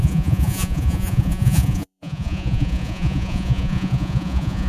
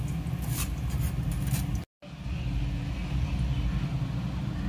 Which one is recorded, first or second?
second